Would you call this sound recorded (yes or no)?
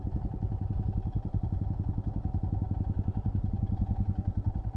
yes